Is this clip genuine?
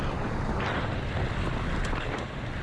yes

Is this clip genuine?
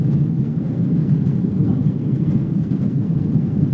no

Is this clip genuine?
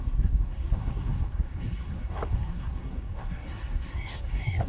no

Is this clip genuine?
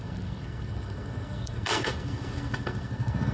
no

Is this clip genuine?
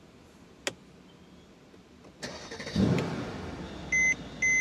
yes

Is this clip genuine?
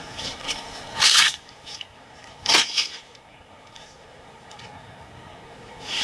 no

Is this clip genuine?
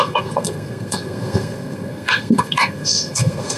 no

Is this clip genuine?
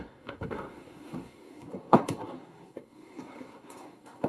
no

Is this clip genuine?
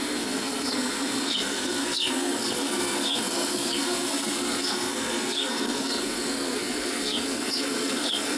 no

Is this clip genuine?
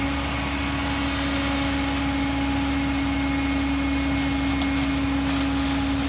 yes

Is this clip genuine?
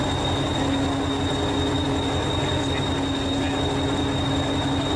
yes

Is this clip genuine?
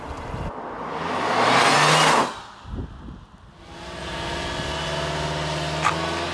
yes